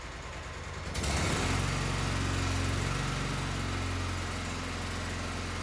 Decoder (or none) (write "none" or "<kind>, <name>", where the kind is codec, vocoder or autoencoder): none